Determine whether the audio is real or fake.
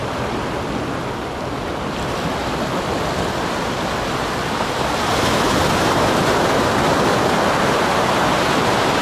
real